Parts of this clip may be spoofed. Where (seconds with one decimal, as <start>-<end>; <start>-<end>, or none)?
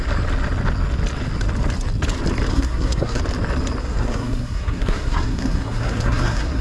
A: 2.5-3.2; 3.8-6.6